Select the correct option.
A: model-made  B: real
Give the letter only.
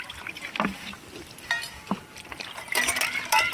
B